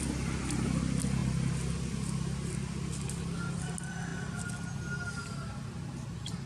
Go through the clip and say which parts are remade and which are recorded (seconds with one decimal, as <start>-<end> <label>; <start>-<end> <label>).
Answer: 0.0-6.5 recorded